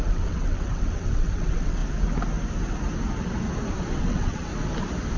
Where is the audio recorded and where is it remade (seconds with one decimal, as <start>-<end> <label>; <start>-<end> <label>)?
0.0-1.8 remade; 1.8-4.0 recorded; 4.0-4.5 remade; 4.5-5.2 recorded